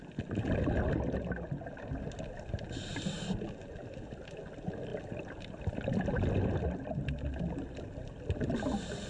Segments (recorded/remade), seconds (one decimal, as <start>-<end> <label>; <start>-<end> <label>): 0.0-9.1 recorded